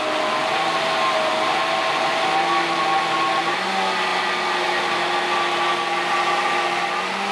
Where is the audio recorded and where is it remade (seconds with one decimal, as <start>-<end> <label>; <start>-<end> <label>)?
0.0-7.3 recorded